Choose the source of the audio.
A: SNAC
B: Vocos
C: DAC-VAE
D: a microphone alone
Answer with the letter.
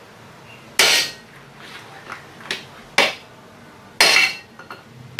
D